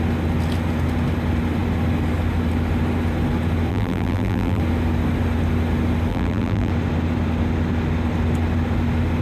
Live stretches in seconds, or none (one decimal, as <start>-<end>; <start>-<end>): 0.0-3.7; 4.6-6.1; 6.7-9.2